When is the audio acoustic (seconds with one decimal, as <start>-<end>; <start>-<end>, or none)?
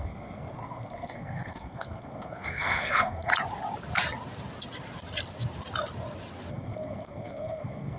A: 3.3-6.5